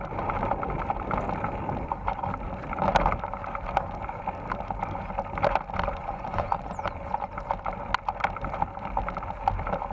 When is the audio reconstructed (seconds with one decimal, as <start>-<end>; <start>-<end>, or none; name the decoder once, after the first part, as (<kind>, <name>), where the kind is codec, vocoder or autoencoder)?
6.0-6.7 (vocoder, Vocos)